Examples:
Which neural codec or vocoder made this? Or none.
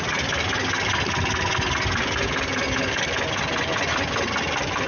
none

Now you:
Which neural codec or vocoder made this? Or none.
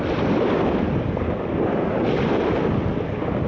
none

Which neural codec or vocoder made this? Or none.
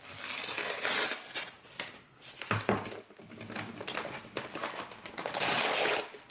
none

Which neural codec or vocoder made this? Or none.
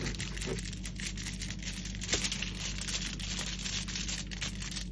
none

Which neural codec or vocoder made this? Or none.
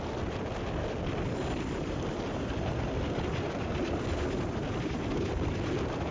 vocoder, BigVGAN v2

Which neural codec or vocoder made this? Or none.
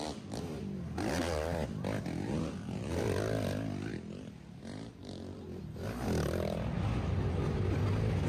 none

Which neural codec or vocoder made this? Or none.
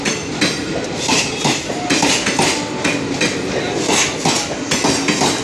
none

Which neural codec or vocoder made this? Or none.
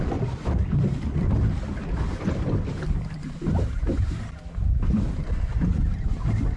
none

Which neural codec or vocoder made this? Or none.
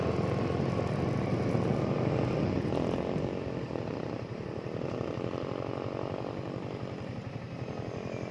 none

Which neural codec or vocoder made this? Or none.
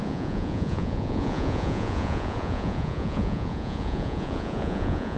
vocoder, Vocos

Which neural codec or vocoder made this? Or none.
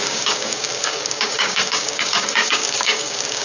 codec, DAC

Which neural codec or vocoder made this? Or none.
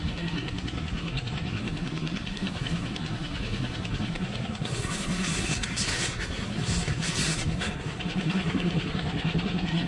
codec, SNAC